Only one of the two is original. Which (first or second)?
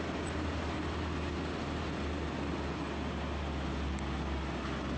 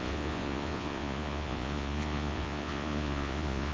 first